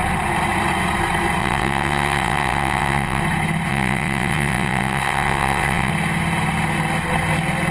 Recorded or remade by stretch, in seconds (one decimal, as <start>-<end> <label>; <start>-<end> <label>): 0.0-1.4 recorded; 1.4-3.2 remade; 3.2-3.7 recorded; 3.7-5.9 remade; 5.9-7.7 recorded